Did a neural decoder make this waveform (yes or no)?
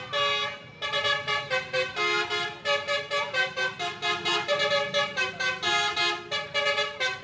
no